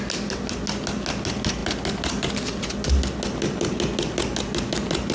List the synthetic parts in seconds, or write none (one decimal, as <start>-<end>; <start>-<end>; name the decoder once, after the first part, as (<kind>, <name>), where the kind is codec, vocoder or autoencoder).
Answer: none